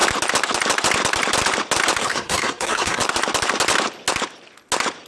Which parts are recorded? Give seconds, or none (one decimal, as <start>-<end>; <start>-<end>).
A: 0.0-2.0; 3.0-5.1